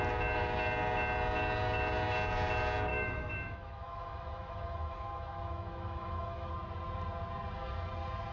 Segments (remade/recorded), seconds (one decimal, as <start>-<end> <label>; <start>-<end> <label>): 0.0-2.9 recorded; 2.9-6.5 remade; 6.5-8.3 recorded